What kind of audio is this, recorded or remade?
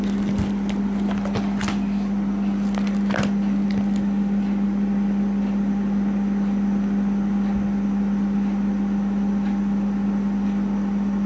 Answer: recorded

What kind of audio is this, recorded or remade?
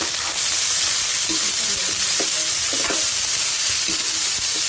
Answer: recorded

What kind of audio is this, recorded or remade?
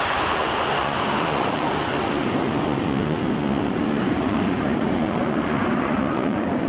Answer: remade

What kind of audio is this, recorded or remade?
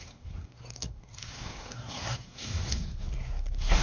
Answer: remade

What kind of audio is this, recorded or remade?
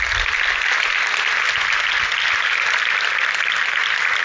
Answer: recorded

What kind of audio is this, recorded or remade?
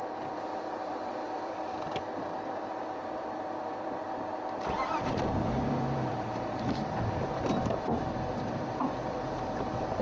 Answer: remade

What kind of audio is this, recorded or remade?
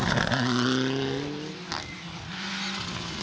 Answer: recorded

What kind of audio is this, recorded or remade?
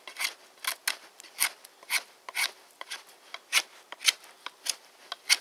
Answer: recorded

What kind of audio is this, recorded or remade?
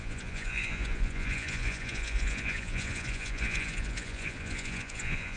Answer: remade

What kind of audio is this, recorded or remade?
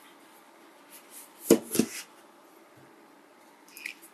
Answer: recorded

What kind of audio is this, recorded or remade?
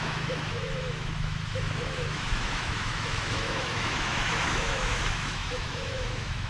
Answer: remade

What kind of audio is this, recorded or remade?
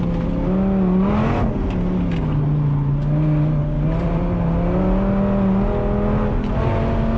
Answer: recorded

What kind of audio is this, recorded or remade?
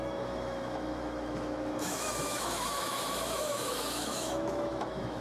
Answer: remade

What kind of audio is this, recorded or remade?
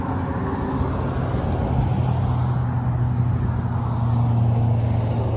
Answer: recorded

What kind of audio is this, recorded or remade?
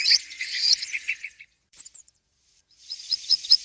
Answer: remade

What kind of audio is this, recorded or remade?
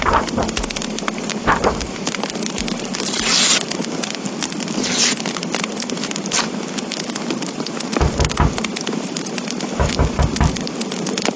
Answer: recorded